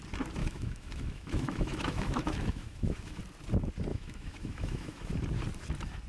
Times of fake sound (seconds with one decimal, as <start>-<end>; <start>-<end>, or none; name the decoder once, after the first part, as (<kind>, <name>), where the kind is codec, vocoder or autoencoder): 0.4-3.2 (autoencoder, DAC-VAE); 3.9-5.1